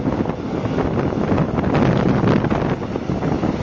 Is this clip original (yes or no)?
yes